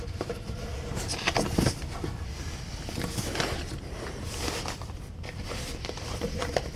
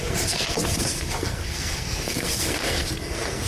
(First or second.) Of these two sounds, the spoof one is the second